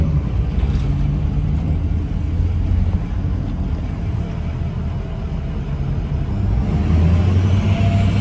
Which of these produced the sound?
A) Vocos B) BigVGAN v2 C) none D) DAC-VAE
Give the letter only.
C